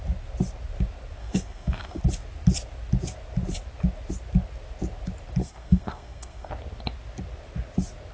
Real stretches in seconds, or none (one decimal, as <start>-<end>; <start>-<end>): 0.0-1.2; 2.0-5.4; 6.5-8.1